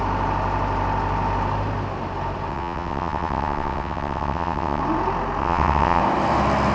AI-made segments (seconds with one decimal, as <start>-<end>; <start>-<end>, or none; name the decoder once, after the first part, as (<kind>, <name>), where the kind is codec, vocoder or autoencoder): 2.5-4.8 (vocoder, WaveNeXt); 5.4-6.0